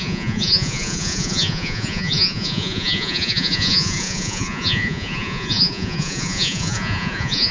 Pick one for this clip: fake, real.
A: fake